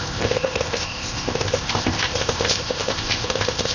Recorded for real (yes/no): no